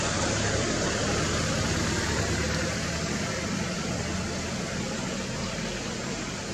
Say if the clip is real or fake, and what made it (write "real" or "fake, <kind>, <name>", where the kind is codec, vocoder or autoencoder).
real